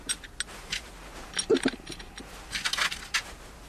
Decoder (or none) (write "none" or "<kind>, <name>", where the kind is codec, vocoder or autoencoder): none